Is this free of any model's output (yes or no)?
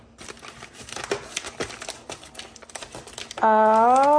yes